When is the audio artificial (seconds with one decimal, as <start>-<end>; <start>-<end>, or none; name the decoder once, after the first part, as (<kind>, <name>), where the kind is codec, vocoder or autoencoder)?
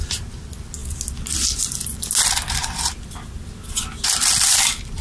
none